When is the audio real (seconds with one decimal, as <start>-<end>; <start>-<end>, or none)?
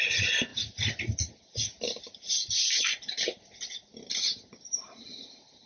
0.0-5.7